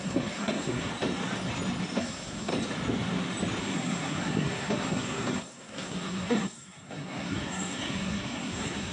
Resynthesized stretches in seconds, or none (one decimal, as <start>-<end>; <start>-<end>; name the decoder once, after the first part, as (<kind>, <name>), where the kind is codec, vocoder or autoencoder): 0.0-0.9 (codec, SNAC); 2.0-2.5; 3.6-8.9